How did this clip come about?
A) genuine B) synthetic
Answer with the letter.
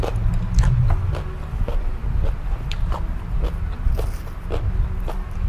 A